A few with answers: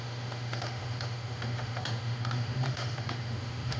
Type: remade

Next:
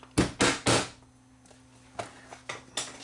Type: recorded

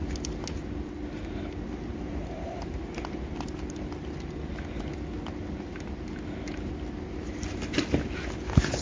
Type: recorded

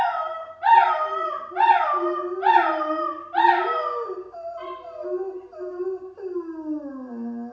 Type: recorded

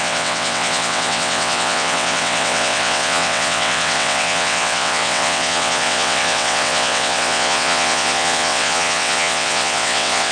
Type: remade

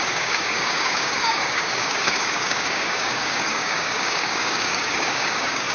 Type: remade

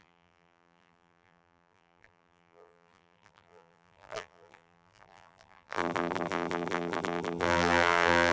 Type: remade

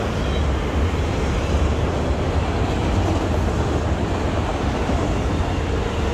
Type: recorded